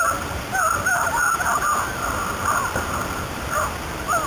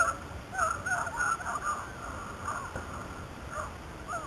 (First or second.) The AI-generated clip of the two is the first